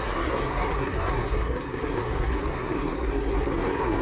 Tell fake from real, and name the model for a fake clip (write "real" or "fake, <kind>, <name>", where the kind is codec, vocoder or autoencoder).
fake, codec, SNAC